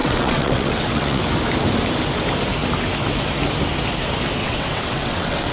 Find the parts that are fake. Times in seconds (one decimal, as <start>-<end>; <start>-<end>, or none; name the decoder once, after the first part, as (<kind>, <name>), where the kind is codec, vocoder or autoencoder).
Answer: 0.0-1.2 (vocoder, WaveNeXt); 4.4-5.5